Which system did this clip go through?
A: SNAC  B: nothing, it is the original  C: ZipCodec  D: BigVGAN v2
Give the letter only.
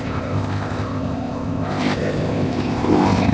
C